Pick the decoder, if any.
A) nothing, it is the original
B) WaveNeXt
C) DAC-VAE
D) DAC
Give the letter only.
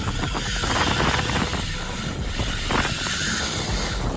A